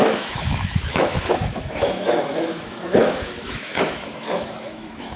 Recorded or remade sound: remade